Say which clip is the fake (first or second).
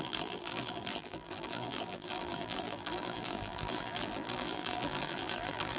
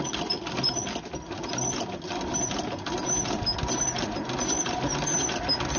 first